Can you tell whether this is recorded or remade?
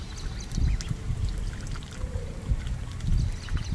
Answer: recorded